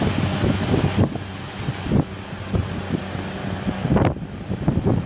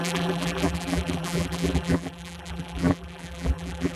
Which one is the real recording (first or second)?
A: first